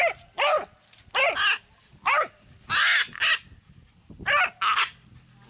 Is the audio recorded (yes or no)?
yes